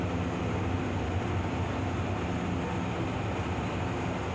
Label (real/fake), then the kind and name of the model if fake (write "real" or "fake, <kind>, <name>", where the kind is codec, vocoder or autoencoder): real